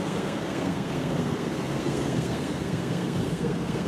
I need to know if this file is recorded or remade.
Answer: remade